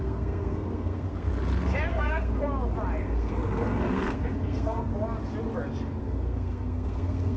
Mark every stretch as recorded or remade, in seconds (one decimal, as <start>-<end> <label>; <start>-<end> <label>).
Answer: 0.0-1.3 remade; 1.3-1.9 recorded; 1.9-2.3 remade; 2.3-3.0 recorded; 3.0-4.9 remade; 4.9-6.0 recorded; 6.0-7.4 remade